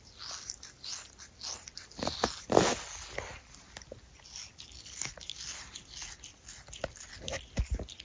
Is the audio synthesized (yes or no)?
no